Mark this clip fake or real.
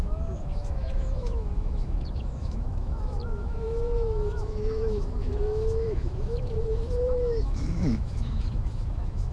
fake